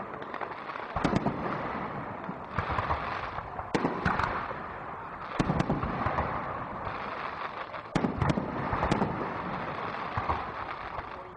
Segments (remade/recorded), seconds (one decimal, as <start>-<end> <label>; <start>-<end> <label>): 0.0-11.4 recorded